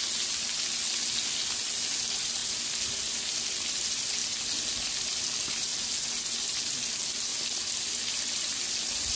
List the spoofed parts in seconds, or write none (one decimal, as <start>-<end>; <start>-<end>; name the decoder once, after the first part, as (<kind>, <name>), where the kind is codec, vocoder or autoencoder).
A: 7.3-8.6 (vocoder, BigVGAN v2)